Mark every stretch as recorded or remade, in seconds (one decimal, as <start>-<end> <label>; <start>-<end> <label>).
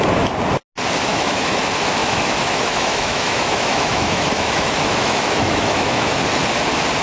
0.0-1.1 recorded; 1.1-1.6 remade; 1.6-2.0 recorded; 2.0-6.2 remade; 6.2-7.0 recorded